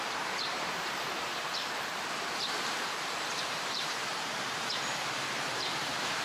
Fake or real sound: fake